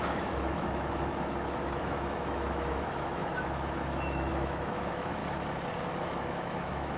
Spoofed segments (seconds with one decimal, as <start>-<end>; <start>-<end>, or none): 0.0-5.2; 5.9-7.0